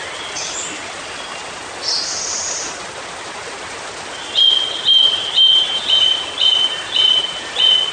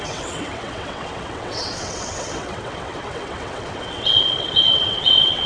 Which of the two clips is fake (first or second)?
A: second